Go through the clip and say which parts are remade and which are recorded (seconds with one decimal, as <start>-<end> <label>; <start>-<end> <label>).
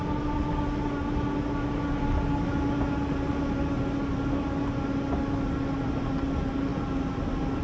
0.0-7.6 recorded